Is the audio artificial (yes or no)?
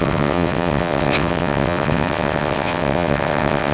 yes